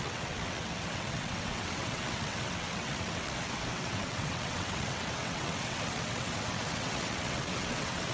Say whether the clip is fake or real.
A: fake